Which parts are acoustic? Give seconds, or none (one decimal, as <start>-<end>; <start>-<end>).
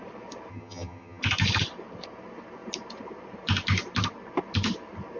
0.0-0.5; 1.2-5.2